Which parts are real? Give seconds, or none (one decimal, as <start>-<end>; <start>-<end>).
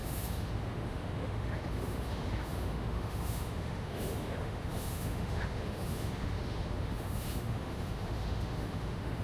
none